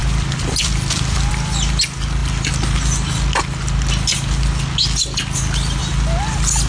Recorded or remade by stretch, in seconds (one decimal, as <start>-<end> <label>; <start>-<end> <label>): 0.0-1.3 remade; 1.3-6.7 recorded